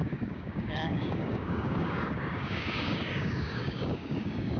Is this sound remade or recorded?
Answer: remade